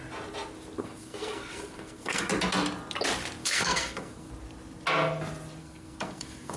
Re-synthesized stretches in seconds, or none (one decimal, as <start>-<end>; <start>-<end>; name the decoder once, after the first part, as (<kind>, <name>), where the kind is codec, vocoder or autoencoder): 0.8-2.3 (codec, SNAC); 3.4-4.3; 5.6-6.6